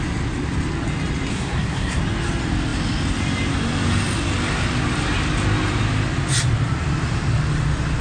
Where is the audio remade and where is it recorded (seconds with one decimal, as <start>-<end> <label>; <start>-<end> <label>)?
0.0-1.3 recorded; 1.3-2.0 remade; 2.0-8.0 recorded

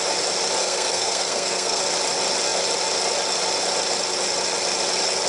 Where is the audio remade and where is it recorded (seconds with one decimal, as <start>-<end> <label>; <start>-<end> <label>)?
0.0-0.6 recorded; 0.6-1.8 remade; 1.8-5.3 recorded

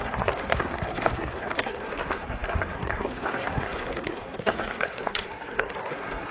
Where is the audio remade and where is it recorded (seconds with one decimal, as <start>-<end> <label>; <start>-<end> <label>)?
0.0-6.3 remade

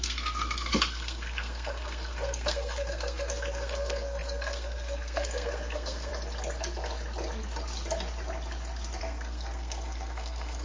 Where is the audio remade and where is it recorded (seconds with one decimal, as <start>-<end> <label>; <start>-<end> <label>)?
0.0-6.1 remade; 6.1-9.0 recorded; 9.0-10.6 remade

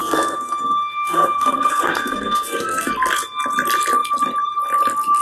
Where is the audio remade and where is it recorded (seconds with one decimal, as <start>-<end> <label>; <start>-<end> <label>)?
0.0-2.9 remade; 2.9-5.2 recorded

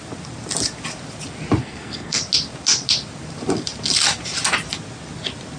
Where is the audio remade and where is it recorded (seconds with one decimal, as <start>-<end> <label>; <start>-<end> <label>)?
0.0-1.6 recorded; 1.6-2.2 remade; 2.2-5.6 recorded

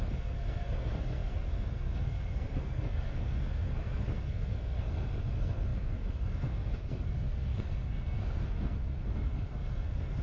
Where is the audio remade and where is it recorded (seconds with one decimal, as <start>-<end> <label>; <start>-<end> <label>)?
0.0-10.2 remade

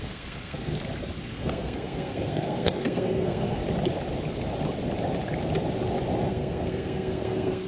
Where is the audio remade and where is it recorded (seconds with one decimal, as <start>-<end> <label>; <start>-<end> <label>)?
0.0-0.7 remade; 0.7-1.2 recorded; 1.2-3.6 remade; 3.6-6.3 recorded; 6.3-7.7 remade